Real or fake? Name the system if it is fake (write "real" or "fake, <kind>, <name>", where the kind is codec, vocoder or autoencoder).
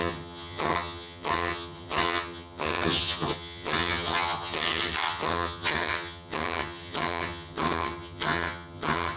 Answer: fake, vocoder, HiFi-GAN